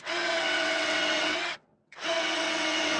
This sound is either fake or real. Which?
fake